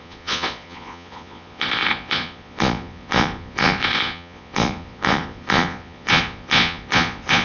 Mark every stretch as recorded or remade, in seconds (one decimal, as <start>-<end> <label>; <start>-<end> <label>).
0.0-7.4 remade

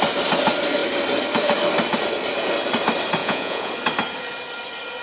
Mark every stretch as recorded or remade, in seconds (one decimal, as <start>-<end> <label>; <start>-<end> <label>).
0.0-3.2 recorded; 3.2-3.7 remade; 3.7-5.0 recorded

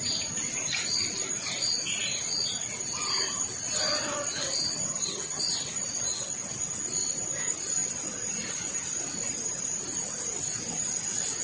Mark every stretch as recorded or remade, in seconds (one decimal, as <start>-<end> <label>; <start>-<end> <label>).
0.0-4.9 recorded; 4.9-5.4 remade; 5.4-11.4 recorded